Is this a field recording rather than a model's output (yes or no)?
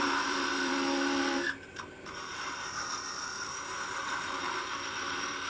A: no